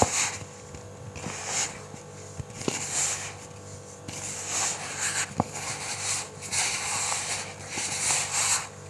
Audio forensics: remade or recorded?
recorded